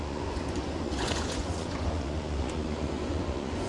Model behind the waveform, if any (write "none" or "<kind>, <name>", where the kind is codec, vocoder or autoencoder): vocoder, Vocos